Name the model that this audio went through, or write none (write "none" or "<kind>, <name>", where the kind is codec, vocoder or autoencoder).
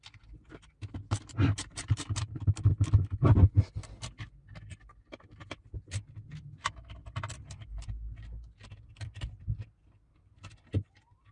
none